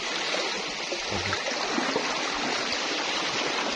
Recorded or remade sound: recorded